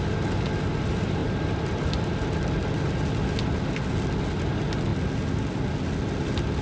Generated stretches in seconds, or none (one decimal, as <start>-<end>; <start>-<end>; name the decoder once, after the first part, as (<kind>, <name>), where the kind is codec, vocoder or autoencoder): 1.2-2.7 (vocoder, BigVGAN v2)